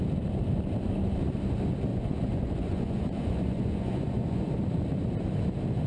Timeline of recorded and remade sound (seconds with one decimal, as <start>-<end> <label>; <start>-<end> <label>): 0.0-1.9 recorded; 1.9-4.5 remade; 4.5-5.9 recorded